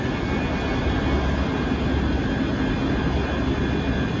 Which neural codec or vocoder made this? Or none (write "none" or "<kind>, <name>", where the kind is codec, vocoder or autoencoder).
none